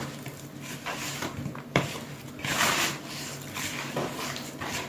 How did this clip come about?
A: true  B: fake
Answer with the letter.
A